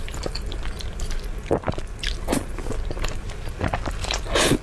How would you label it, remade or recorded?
recorded